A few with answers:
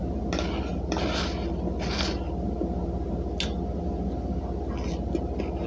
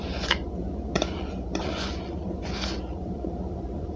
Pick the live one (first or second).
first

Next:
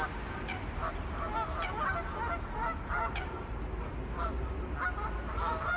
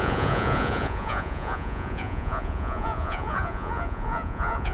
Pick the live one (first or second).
first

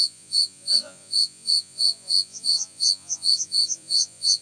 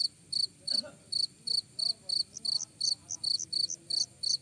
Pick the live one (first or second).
second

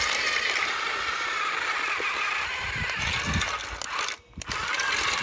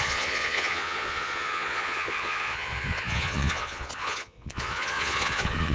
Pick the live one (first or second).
first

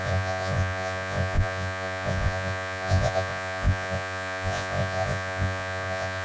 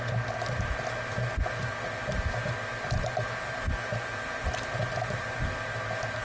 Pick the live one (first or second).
second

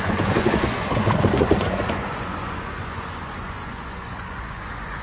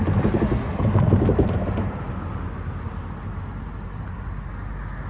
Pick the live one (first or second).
second